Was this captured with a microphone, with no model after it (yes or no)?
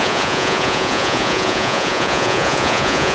no